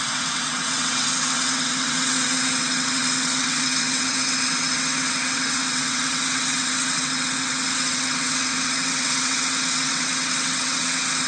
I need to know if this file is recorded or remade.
remade